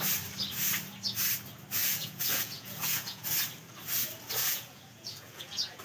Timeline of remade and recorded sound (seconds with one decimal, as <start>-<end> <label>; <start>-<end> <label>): 0.0-1.8 recorded; 1.8-3.3 remade; 3.3-4.4 recorded; 4.4-5.8 remade